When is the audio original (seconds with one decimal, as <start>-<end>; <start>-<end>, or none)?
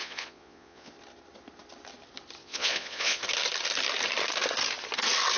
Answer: 0.9-2.4; 3.2-5.4